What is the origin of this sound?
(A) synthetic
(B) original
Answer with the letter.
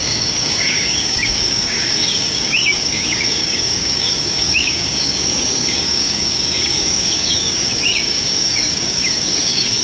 A